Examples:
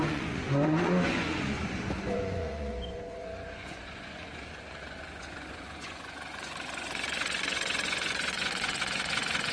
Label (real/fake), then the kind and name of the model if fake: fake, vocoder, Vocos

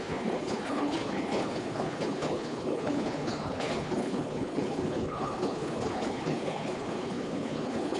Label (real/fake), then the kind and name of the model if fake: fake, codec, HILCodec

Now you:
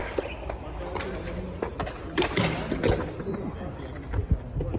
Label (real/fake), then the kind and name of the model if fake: real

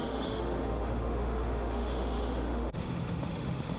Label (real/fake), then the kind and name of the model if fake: fake, autoencoder, DAC-VAE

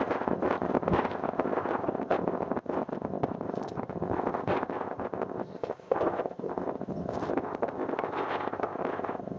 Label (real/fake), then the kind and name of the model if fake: fake, codec, ZipCodec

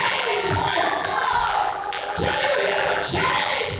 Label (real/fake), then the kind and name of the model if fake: fake, vocoder, BigVGAN v2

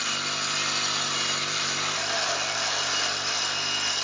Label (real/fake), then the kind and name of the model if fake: real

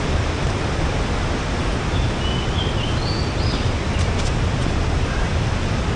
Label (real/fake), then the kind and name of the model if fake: real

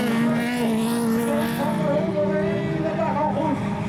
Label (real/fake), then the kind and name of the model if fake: real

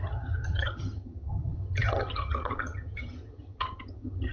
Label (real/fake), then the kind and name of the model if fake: fake, vocoder, HiFi-GAN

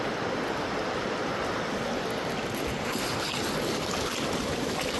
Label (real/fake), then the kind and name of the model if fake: real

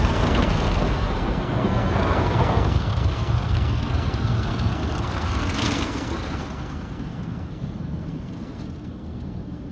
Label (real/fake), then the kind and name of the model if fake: fake, codec, SNAC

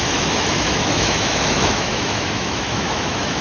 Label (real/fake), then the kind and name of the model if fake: fake, autoencoder, DAC-VAE